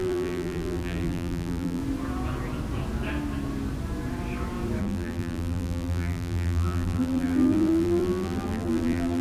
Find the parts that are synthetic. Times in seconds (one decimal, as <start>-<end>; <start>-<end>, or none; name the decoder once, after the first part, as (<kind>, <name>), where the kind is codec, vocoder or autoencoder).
0.0-1.8 (vocoder, BigVGAN v2); 4.8-9.2